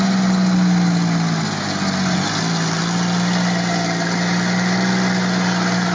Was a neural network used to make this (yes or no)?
no